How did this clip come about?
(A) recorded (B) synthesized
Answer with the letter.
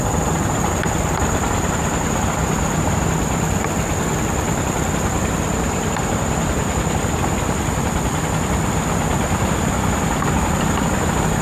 A